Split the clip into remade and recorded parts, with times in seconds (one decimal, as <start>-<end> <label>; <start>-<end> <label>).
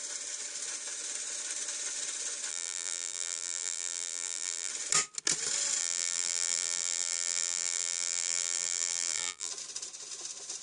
0.0-2.5 recorded; 2.5-4.7 remade; 4.7-5.8 recorded; 5.8-9.5 remade; 9.5-10.6 recorded